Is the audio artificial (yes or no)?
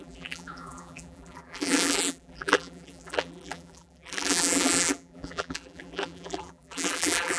yes